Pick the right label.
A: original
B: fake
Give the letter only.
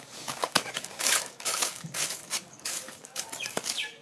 B